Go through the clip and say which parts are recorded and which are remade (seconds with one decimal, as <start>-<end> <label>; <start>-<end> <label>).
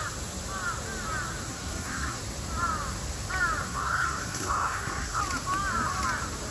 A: 0.0-1.5 recorded; 1.5-2.2 remade; 2.2-3.6 recorded; 3.6-5.2 remade; 5.2-6.5 recorded